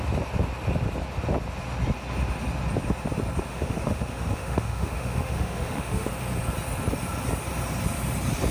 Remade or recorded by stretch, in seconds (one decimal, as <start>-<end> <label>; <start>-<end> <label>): 0.0-3.5 recorded; 3.5-6.1 remade; 6.1-8.5 recorded